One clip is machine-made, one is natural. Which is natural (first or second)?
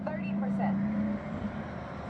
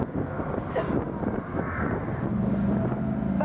second